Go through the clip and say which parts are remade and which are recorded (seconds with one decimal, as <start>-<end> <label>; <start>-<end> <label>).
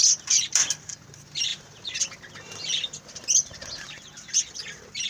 0.0-5.1 recorded